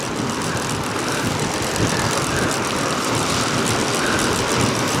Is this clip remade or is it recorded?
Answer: recorded